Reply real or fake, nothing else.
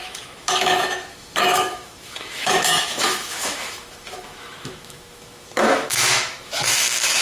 fake